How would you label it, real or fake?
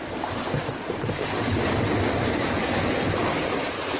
real